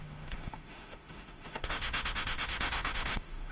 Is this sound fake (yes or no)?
yes